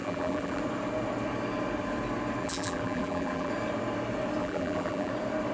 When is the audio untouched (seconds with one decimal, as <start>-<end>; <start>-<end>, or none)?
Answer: 0.6-2.4; 3.5-4.4; 5.1-5.5